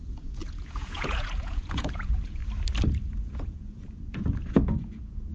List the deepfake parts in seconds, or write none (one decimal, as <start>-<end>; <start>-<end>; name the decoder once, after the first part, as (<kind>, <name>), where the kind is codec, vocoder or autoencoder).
0.0-2.4 (vocoder, Vocos); 3.1-5.3